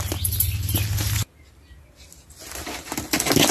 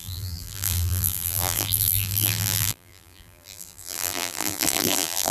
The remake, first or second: second